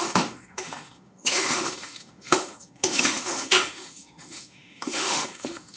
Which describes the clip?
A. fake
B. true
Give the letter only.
A